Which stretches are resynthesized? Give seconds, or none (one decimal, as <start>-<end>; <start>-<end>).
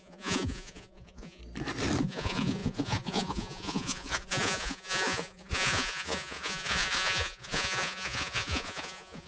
0.0-1.4; 2.0-9.3